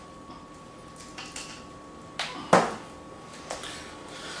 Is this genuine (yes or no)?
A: yes